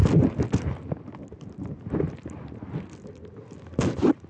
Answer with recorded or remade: recorded